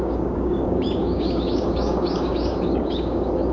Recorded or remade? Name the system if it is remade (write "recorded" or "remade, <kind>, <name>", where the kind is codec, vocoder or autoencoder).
remade, codec, DAC